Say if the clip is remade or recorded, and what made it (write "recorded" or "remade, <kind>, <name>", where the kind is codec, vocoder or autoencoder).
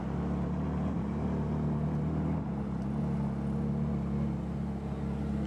recorded